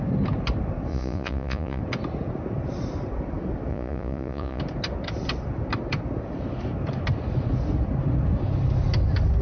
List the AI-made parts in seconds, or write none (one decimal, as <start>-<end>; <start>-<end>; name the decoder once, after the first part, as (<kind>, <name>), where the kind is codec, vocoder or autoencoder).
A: 0.9-1.8 (vocoder, Vocos); 3.7-4.6